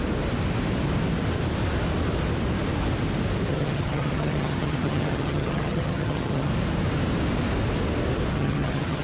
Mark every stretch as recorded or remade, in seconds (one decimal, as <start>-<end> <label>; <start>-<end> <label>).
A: 0.0-3.5 recorded; 3.5-6.5 remade; 6.5-8.3 recorded; 8.3-9.0 remade